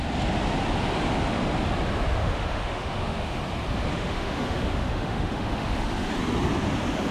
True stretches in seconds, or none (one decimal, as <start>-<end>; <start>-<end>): 0.0-2.2; 3.4-3.9; 6.1-7.1